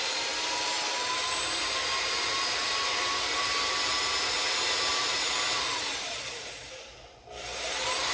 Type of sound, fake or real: real